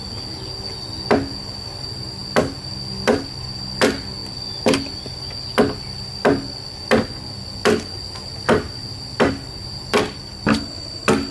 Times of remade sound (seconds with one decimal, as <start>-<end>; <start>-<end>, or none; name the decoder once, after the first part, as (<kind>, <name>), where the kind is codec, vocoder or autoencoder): none